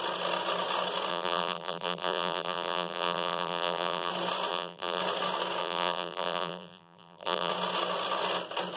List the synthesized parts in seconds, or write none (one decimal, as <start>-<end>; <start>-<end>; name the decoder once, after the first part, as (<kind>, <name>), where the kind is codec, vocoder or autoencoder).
1.1-4.1 (vocoder, BigVGAN v2); 4.5-5.0; 5.6-7.5

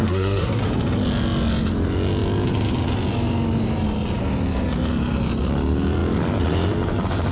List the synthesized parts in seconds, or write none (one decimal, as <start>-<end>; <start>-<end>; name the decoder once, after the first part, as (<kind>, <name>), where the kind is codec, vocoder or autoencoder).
0.0-0.7 (codec, SNAC)

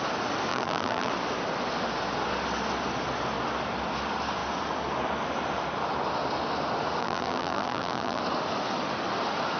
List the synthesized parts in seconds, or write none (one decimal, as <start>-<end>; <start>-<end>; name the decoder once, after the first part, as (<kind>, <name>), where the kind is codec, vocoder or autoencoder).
0.5-1.1 (vocoder, BigVGAN v2); 7.0-8.2

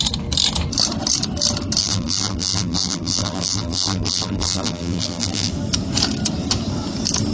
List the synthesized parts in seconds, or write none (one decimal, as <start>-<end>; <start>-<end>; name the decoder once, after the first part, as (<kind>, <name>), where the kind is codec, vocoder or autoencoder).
1.8-5.5 (vocoder, BigVGAN v2)